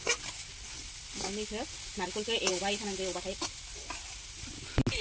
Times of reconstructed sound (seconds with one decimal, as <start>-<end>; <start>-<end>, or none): none